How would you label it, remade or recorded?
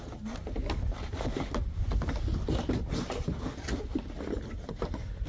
recorded